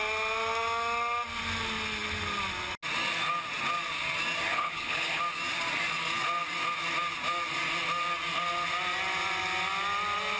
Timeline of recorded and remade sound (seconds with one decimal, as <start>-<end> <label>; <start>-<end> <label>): 0.0-4.5 recorded; 4.5-5.2 remade; 5.2-10.4 recorded